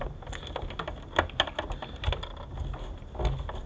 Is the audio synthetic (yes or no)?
no